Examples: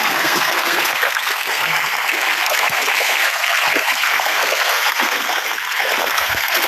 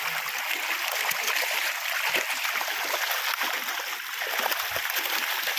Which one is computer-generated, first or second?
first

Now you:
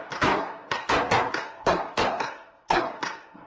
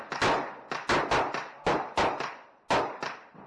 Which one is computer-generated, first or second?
first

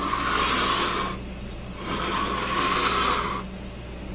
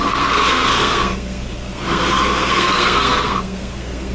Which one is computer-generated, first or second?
second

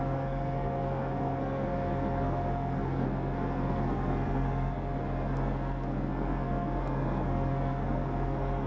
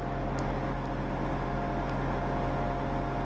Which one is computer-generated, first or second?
first